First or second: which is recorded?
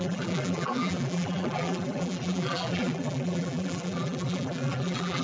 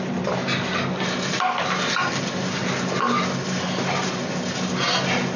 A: second